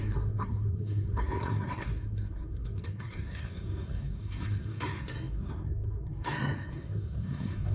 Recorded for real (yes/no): no